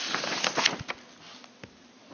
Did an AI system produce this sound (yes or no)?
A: no